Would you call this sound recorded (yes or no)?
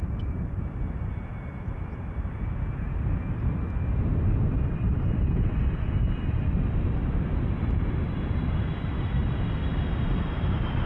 yes